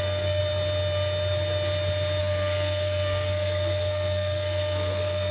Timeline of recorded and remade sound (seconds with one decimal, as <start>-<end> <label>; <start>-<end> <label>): 0.0-0.4 remade; 0.4-2.2 recorded; 2.2-5.3 remade